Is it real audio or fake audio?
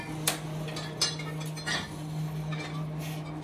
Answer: real